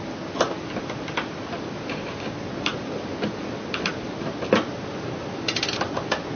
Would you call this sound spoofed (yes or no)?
no